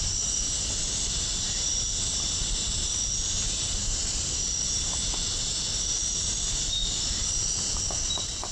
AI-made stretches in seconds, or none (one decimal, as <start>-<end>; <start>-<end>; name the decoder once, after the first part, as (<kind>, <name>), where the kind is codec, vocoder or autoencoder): none